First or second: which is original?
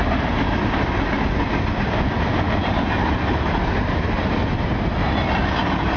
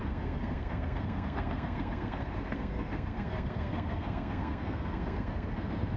first